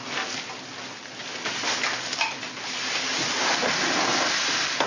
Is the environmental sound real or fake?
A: real